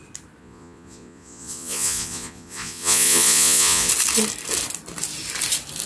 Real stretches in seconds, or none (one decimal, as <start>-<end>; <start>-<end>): 0.0-0.4; 3.9-5.9